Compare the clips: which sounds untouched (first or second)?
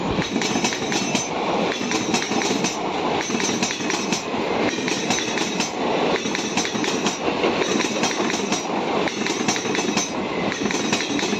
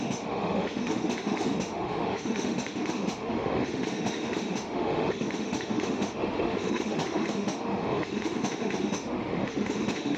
first